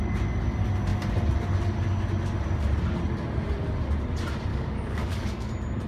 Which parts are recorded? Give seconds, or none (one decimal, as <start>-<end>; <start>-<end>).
0.0-4.5; 5.5-5.9